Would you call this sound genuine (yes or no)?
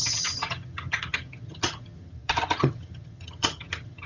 no